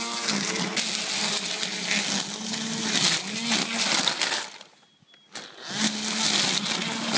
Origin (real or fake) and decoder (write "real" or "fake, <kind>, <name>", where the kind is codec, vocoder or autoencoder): real